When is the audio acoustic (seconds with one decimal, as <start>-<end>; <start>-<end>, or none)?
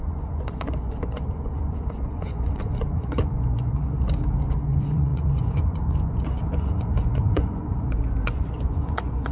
3.8-4.4